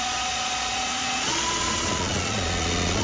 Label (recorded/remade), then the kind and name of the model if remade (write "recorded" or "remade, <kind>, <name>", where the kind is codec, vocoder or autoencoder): remade, vocoder, Vocos